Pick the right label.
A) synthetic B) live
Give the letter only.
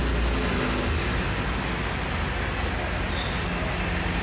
B